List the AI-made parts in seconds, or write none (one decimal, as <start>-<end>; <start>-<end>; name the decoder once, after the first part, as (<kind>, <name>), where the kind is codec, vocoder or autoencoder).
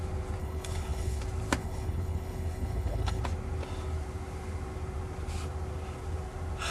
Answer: 0.4-1.2 (codec, HILCodec); 1.6-3.2